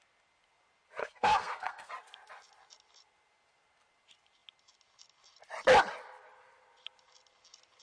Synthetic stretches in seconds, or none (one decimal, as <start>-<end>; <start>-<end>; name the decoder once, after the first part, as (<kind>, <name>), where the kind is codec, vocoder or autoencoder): 1.0-1.9 (codec, SNAC)